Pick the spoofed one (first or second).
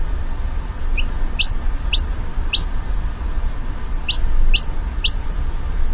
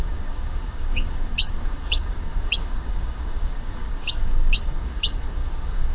second